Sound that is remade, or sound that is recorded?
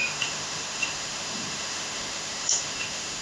remade